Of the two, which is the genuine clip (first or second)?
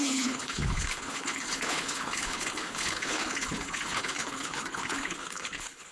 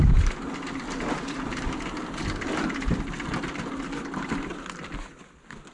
second